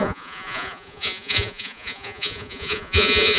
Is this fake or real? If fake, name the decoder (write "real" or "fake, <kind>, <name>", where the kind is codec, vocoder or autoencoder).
fake, vocoder, Vocos